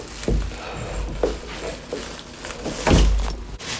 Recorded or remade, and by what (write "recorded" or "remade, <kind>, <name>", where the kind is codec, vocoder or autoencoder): recorded